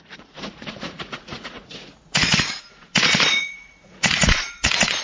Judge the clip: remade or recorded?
remade